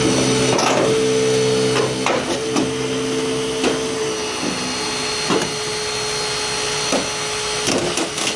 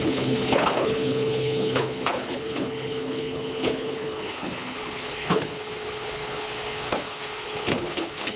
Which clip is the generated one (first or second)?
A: second